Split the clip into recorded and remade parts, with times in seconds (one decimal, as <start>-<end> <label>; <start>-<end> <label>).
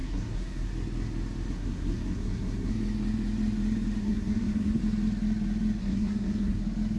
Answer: 0.0-0.7 remade; 0.7-1.5 recorded; 1.5-2.7 remade; 2.7-4.0 recorded; 4.0-4.8 remade; 4.8-5.8 recorded; 5.8-6.6 remade; 6.6-7.0 recorded